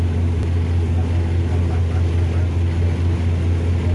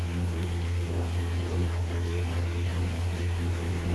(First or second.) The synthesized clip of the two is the second